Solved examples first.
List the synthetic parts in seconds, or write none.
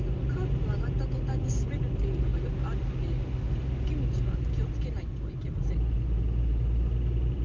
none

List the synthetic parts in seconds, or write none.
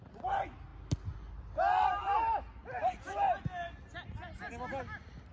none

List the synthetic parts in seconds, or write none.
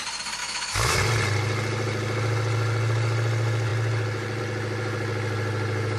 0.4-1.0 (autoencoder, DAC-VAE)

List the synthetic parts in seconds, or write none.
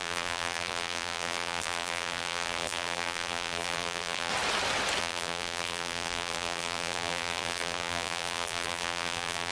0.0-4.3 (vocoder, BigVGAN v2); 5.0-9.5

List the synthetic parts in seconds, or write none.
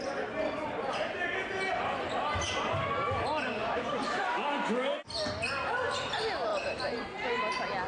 3.6-4.2 (vocoder, BigVGAN v2)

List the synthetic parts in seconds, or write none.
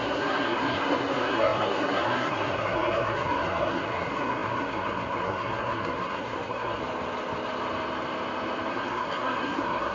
0.0-6.8 (codec, SNAC); 8.7-9.9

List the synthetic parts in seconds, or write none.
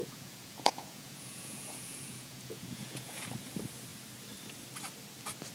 0.0-3.3 (vocoder, Vocos)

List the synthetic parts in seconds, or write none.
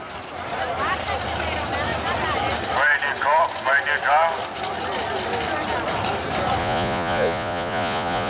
6.6-8.3 (vocoder, Vocos)